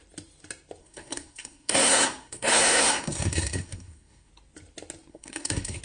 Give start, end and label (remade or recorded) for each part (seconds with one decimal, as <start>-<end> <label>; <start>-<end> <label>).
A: 0.0-0.8 recorded; 0.8-4.3 remade; 4.3-5.1 recorded; 5.1-5.8 remade